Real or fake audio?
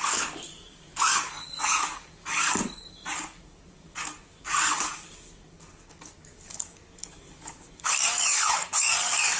fake